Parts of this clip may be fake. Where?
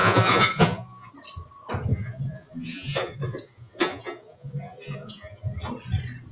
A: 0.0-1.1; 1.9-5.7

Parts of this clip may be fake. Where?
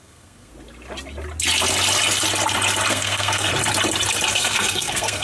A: 0.0-0.5; 2.9-3.5; 4.3-5.2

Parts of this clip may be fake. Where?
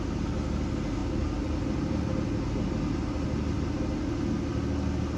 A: none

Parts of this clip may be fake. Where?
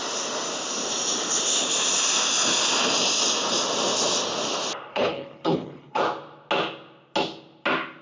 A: 4.9-6.0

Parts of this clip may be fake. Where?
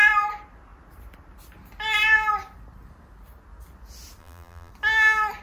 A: 4.2-4.7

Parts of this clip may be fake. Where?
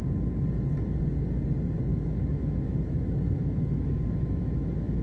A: 1.9-5.0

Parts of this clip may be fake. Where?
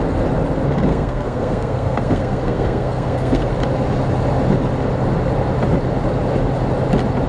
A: 0.9-3.5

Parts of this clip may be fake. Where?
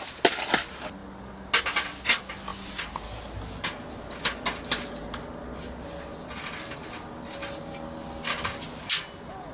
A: none